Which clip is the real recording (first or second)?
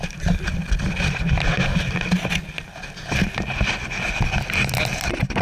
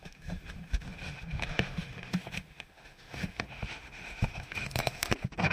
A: first